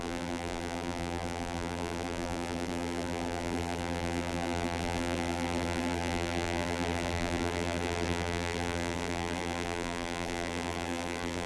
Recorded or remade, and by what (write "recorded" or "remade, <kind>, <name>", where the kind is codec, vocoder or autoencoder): remade, vocoder, BigVGAN v2